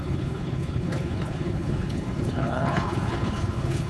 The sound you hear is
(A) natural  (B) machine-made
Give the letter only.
B